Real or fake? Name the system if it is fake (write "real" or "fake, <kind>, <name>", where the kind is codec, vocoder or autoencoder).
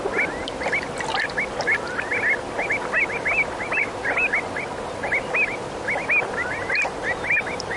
real